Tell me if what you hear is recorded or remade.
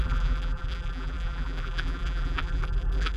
remade